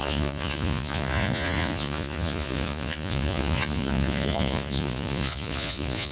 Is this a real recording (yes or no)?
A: no